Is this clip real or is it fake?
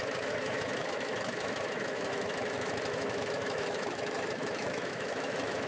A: fake